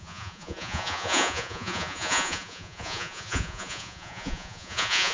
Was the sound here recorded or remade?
remade